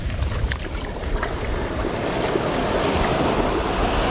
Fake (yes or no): no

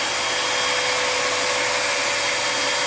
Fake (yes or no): no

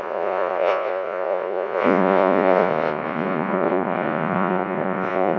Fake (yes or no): yes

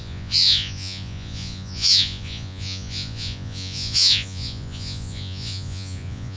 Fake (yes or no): yes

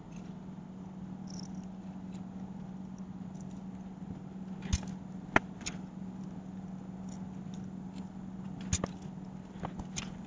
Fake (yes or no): no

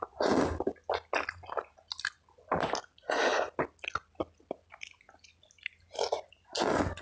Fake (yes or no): no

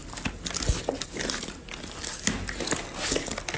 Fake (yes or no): no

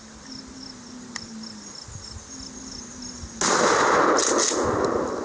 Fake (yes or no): no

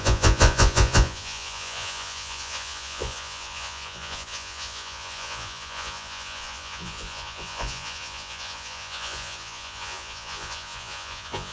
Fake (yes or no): yes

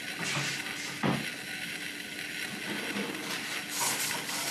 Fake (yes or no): no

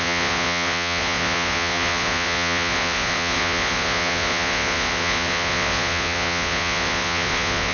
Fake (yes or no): yes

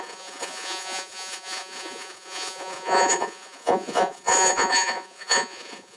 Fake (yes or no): yes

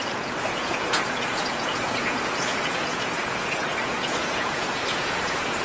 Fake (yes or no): yes